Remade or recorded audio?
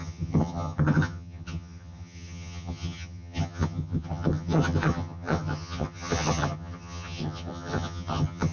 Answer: remade